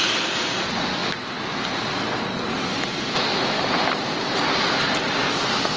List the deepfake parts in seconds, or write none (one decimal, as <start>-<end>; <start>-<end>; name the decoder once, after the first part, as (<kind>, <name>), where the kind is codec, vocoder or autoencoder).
none